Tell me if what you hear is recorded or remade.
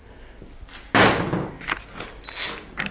recorded